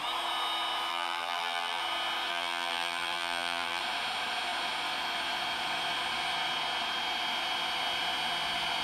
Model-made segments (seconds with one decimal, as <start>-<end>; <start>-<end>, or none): 0.9-1.8; 2.3-3.8